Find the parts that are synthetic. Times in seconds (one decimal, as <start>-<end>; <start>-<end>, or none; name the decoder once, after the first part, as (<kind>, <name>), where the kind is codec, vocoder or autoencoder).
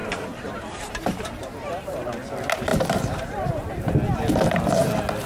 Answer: 0.0-2.1 (vocoder, BigVGAN v2); 2.7-3.7